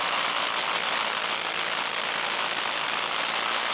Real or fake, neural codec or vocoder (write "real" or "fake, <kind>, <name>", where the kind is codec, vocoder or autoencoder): real